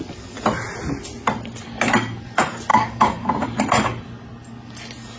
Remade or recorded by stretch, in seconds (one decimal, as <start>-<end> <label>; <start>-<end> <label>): 0.0-2.7 recorded; 2.7-3.3 remade; 3.3-5.2 recorded